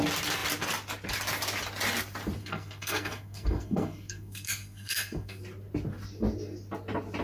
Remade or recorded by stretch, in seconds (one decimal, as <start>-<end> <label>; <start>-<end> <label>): 0.0-2.4 recorded; 2.4-5.4 remade; 5.4-7.2 recorded